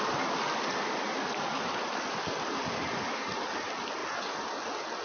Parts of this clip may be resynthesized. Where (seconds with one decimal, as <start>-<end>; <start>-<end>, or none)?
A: 0.0-5.0